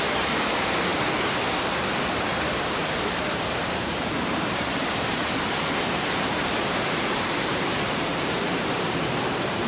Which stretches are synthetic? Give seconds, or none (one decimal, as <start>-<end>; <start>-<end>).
0.0-0.9; 2.0-9.7